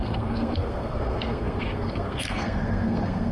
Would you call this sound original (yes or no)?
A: no